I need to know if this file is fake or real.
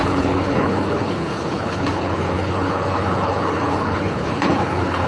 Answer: fake